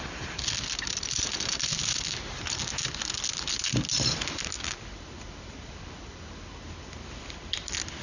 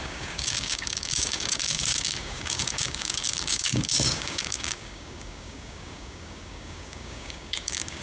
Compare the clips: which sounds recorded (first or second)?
first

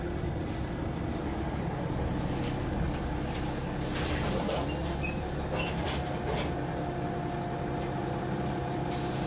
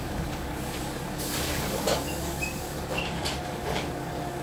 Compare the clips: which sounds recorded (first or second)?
first